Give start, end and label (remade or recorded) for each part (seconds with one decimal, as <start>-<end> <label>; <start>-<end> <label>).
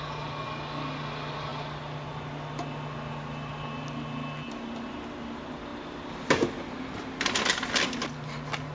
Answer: 0.0-8.7 recorded